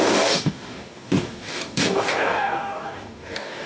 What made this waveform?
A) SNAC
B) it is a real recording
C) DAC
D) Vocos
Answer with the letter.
C